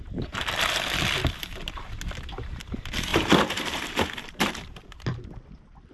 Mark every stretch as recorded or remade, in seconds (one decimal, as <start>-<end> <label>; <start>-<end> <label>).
0.0-3.1 recorded; 3.1-4.9 remade; 4.9-5.9 recorded